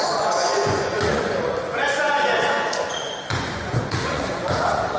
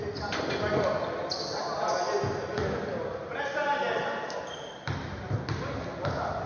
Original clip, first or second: second